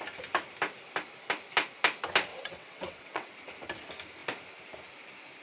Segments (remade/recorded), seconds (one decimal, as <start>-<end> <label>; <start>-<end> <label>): 0.0-2.3 recorded; 2.3-3.3 remade; 3.3-5.4 recorded